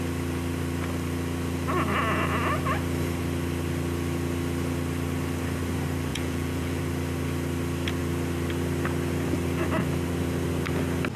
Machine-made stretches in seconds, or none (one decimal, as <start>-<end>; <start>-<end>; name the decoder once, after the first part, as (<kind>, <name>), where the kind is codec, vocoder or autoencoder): 6.1-6.8 (vocoder, Vocos)